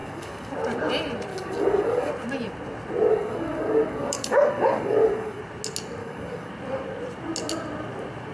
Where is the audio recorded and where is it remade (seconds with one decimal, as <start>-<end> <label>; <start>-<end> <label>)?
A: 0.0-0.5 remade; 0.5-1.3 recorded; 1.3-2.1 remade; 2.1-3.1 recorded; 3.1-5.4 remade; 5.4-6.0 recorded; 6.0-6.5 remade; 6.5-8.3 recorded